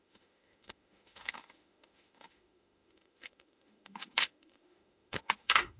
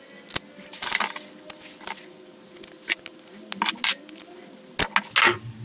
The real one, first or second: second